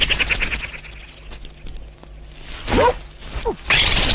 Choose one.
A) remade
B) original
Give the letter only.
B